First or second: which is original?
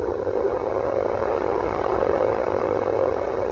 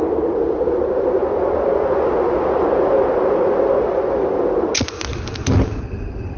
second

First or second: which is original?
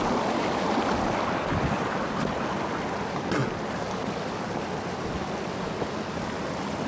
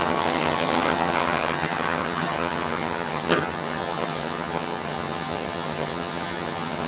first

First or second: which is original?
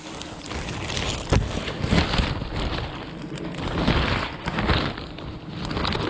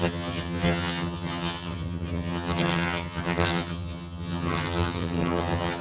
first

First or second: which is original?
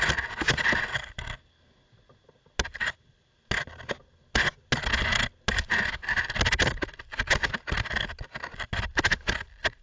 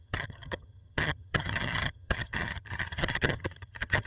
first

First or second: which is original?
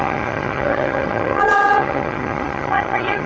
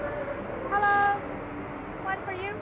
second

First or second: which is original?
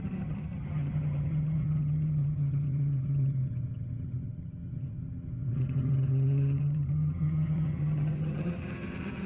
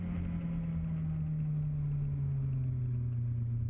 second